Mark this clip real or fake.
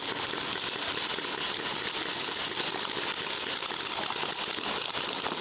real